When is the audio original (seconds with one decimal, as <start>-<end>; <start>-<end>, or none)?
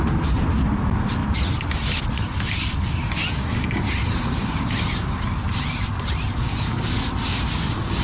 0.0-6.5; 7.0-8.0